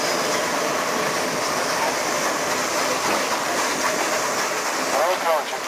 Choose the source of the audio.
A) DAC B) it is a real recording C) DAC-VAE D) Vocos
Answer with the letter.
B